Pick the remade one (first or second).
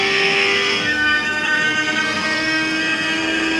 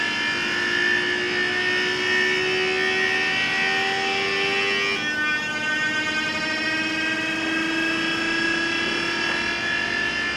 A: first